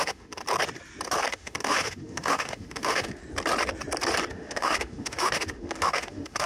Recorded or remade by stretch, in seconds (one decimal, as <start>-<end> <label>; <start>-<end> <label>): 0.0-0.4 remade; 0.4-1.3 recorded; 1.3-3.2 remade; 3.2-4.3 recorded; 4.3-6.5 remade